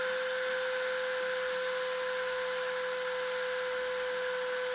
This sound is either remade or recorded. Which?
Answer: recorded